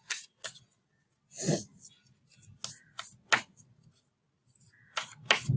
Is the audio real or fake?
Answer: real